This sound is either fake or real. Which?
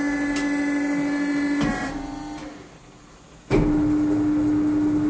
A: real